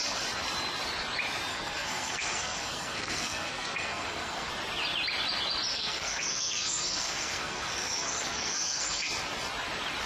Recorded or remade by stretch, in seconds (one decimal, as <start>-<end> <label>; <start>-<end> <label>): 0.0-1.5 recorded; 1.5-4.5 remade; 4.5-5.7 recorded; 5.7-9.1 remade; 9.1-10.1 recorded